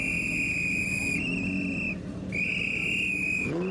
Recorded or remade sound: recorded